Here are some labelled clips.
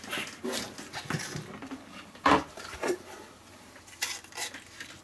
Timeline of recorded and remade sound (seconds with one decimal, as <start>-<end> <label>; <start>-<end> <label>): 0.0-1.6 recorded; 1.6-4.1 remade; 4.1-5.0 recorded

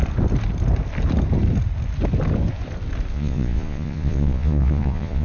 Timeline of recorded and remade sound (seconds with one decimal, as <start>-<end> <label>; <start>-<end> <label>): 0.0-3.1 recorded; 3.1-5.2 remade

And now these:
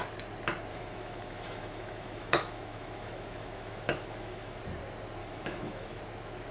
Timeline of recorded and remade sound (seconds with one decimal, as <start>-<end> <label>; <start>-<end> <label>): 0.0-0.7 recorded; 0.7-4.6 remade; 4.6-5.2 recorded; 5.2-6.0 remade; 6.0-6.5 recorded

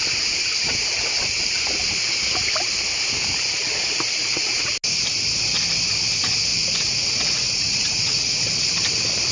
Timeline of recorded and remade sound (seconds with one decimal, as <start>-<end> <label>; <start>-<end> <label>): 0.0-4.2 recorded; 4.2-4.7 remade; 4.7-6.5 recorded; 6.5-8.4 remade; 8.4-9.3 recorded